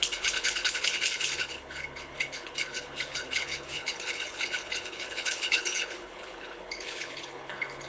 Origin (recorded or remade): remade